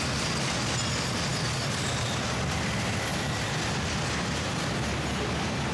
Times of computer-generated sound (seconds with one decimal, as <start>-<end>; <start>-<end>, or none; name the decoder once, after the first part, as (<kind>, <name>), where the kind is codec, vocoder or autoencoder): none